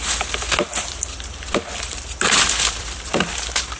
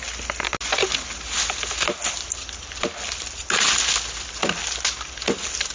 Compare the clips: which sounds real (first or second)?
second